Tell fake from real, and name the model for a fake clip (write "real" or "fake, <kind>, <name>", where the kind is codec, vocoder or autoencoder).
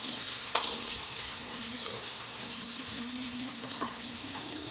fake, codec, SNAC